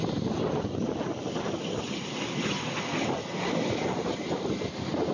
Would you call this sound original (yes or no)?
yes